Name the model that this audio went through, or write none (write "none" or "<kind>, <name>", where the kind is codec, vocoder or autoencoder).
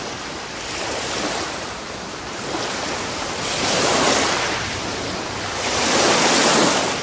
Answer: none